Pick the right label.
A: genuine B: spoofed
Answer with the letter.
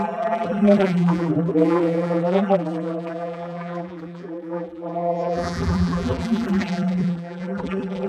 B